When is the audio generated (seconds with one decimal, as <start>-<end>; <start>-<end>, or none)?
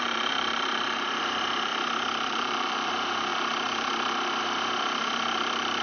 0.0-1.7; 2.3-3.3; 4.4-5.8